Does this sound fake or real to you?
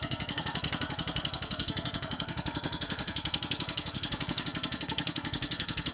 fake